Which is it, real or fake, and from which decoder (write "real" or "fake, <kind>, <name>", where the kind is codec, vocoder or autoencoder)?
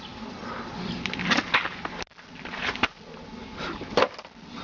real